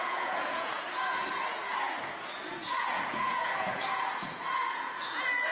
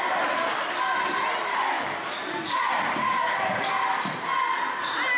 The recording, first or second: second